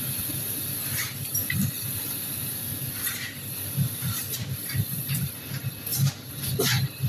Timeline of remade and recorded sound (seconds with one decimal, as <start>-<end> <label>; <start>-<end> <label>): 0.0-7.1 recorded